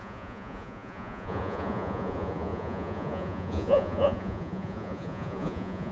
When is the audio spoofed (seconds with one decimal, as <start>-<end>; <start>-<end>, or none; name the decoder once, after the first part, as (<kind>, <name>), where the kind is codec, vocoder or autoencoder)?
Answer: 0.0-5.9 (vocoder, Vocos)